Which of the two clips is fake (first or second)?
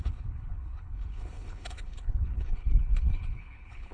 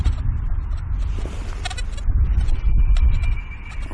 first